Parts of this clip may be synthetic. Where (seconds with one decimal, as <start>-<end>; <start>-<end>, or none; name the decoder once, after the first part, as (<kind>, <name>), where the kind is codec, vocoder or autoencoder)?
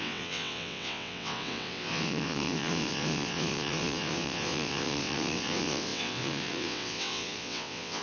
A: 0.0-8.0 (vocoder, WaveNeXt)